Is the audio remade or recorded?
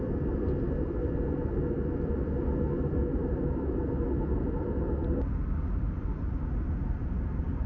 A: recorded